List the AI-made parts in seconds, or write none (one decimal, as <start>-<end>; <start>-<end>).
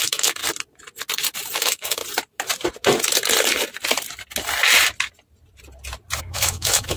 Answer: 0.0-0.4; 1.6-2.0; 6.2-7.0